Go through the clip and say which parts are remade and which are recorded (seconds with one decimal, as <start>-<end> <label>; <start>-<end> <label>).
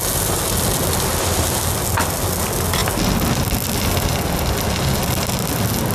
0.0-5.9 recorded